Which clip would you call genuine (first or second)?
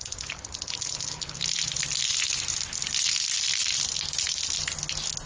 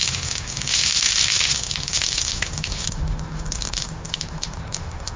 first